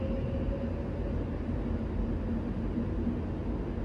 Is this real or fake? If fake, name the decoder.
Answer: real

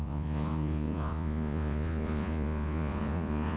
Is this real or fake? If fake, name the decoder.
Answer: fake, vocoder, Vocos